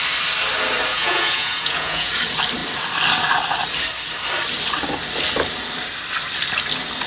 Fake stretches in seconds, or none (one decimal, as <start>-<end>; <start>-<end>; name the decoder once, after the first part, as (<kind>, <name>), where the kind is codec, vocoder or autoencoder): 0.9-2.1 (vocoder, Vocos)

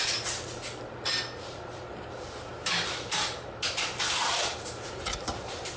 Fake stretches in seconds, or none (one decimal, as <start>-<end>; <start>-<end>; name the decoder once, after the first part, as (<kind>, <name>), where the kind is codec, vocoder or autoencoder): 0.0-0.5 (vocoder, BigVGAN v2); 1.5-5.8

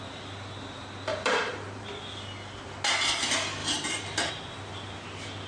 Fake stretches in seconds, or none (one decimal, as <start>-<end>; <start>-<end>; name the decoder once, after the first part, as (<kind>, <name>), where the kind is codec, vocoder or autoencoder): 1.1-1.9 (vocoder, BigVGAN v2); 3.6-4.3

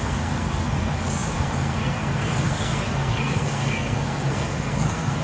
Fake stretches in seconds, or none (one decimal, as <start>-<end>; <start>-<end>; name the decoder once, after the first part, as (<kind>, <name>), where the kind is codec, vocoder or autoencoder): 0.0-5.2 (codec, SNAC)

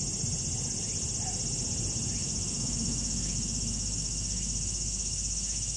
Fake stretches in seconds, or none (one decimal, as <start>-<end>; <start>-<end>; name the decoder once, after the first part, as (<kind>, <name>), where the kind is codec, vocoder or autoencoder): 2.2-5.8 (autoencoder, DAC-VAE)

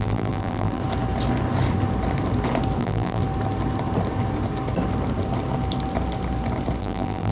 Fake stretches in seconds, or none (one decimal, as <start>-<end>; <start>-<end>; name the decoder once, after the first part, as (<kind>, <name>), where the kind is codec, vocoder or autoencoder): 0.0-0.8 (vocoder, BigVGAN v2); 2.8-3.2; 6.8-7.3

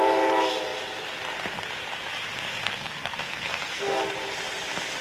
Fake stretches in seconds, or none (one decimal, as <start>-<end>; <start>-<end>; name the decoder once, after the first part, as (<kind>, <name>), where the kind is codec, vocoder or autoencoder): 2.5-4.0 (codec, SNAC)

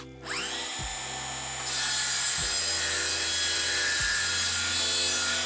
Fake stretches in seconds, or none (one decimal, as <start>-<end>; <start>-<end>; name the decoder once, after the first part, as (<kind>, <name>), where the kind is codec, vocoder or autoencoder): none